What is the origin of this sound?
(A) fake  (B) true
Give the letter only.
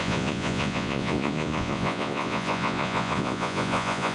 A